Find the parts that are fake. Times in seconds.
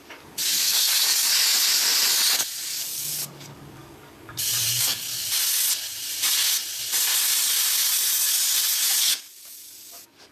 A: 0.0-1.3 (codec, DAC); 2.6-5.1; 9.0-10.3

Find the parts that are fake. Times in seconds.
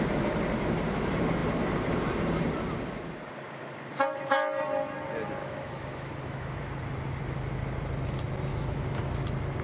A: 5.4-6.6 (autoencoder, DAC-VAE); 8.5-9.0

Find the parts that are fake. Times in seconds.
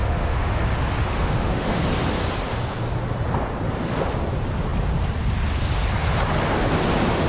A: 0.0-0.6 (autoencoder, DAC-VAE); 1.0-1.8